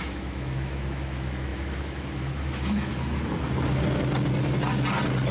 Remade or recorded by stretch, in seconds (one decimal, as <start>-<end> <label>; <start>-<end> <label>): 0.0-2.9 remade; 2.9-5.3 recorded